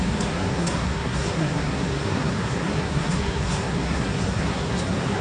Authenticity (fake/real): fake